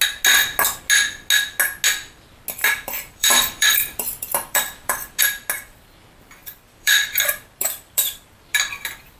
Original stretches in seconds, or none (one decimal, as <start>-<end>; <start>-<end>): 0.0-2.6; 5.2-6.4; 8.7-9.2